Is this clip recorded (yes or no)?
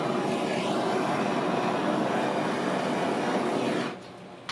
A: yes